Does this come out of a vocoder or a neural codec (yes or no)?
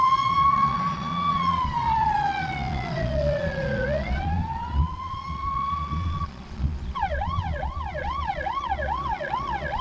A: yes